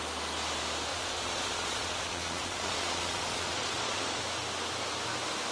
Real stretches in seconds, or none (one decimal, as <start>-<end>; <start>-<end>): 0.0-0.9; 4.2-5.5